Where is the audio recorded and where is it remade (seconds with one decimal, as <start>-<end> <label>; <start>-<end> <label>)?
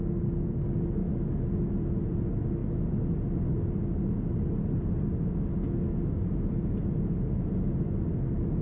0.0-1.0 recorded; 1.0-1.6 remade; 1.6-8.6 recorded